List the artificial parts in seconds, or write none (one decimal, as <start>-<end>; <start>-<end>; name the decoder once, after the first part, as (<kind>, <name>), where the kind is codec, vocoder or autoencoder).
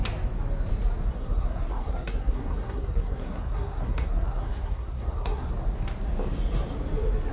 1.1-5.5 (codec, SNAC)